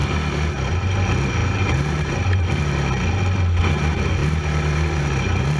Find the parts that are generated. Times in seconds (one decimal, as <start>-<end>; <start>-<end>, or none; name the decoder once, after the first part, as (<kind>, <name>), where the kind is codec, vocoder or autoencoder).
1.4-2.5 (vocoder, BigVGAN v2); 4.2-5.6